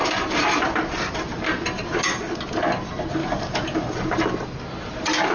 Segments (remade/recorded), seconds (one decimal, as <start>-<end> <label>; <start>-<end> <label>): 0.0-2.1 remade; 2.1-3.2 recorded; 3.2-4.2 remade; 4.2-5.3 recorded